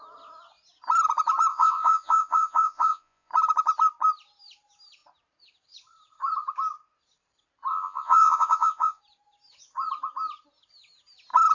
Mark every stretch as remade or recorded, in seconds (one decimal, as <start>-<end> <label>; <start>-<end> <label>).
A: 0.0-1.5 recorded; 1.5-3.3 remade; 3.3-7.7 recorded; 7.7-9.0 remade; 9.0-11.5 recorded